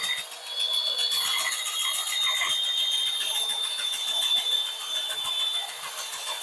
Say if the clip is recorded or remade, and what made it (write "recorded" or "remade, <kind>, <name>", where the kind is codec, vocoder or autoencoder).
recorded